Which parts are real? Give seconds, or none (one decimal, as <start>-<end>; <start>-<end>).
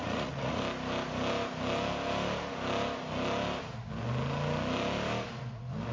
0.6-5.9